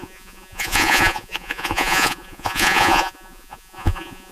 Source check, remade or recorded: remade